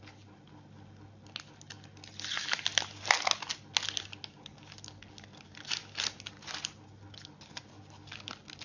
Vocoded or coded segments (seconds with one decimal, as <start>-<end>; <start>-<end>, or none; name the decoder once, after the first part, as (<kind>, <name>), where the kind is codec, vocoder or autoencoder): none